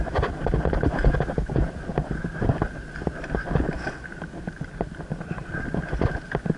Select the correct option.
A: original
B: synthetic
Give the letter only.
A